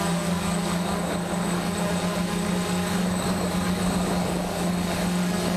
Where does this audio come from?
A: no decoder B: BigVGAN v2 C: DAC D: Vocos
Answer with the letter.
C